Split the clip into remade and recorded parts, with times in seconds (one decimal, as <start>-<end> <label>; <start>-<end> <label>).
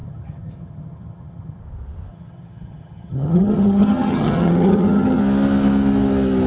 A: 0.0-1.6 remade; 1.6-2.1 recorded; 2.1-5.2 remade; 5.2-6.5 recorded